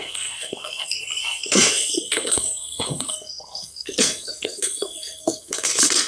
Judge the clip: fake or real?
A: fake